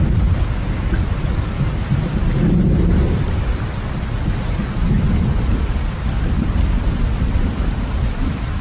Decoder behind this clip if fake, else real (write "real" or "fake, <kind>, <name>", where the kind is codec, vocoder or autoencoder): real